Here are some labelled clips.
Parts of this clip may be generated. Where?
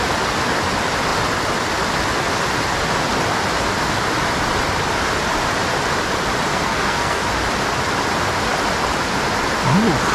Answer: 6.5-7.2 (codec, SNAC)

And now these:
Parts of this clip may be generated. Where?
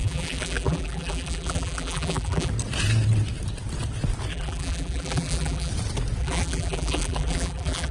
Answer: 0.0-2.5 (vocoder, BigVGAN v2); 4.3-5.7; 6.2-7.9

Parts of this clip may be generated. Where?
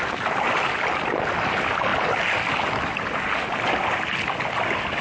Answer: none